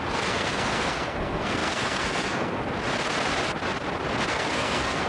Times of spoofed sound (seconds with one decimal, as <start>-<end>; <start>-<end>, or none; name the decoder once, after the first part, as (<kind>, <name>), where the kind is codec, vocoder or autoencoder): 0.0-2.6 (codec, SNAC); 4.3-5.1

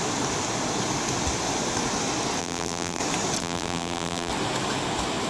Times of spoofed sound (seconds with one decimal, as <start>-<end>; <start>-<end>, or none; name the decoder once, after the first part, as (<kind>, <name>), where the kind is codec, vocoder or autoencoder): 2.4-3.0 (vocoder, BigVGAN v2); 3.4-4.3

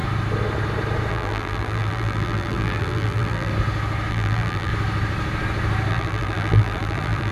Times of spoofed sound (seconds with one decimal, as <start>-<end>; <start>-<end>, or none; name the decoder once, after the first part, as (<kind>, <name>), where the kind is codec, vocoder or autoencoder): 1.1-3.5 (vocoder, BigVGAN v2); 4.1-4.7; 5.9-7.3